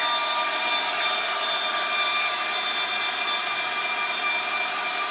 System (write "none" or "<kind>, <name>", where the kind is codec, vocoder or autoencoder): none